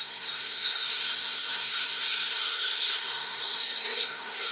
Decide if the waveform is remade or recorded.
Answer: remade